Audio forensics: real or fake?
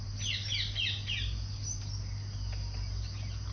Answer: real